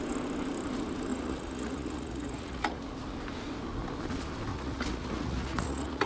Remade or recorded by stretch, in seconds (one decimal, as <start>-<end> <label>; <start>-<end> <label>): 0.0-1.1 recorded; 1.1-2.8 remade; 2.8-4.5 recorded; 4.5-6.1 remade